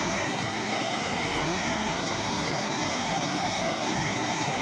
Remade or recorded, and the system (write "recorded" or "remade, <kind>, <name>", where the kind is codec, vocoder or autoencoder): remade, codec, SNAC